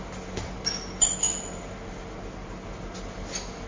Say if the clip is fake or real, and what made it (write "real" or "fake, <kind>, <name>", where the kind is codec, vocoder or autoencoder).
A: real